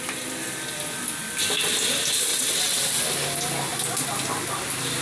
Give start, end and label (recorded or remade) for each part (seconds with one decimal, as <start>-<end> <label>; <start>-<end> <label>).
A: 0.0-2.3 recorded; 2.3-3.0 remade; 3.0-5.0 recorded